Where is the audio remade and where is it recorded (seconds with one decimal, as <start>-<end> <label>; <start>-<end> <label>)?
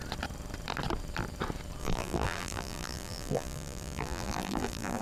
0.0-1.8 recorded; 1.8-5.0 remade